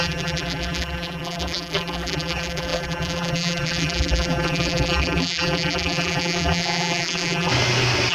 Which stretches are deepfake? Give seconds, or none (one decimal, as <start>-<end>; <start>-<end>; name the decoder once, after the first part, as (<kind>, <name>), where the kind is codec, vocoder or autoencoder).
0.0-7.5 (vocoder, BigVGAN v2)